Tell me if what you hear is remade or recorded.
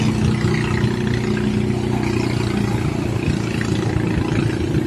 recorded